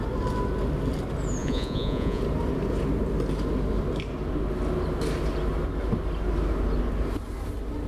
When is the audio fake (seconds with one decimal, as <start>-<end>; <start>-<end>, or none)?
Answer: 1.4-2.2